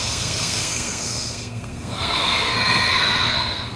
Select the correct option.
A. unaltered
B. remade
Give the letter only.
B